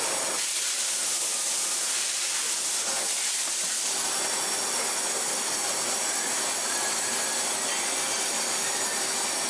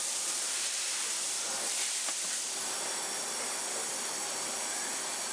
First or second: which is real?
first